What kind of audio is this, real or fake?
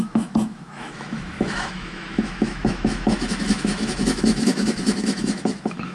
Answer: fake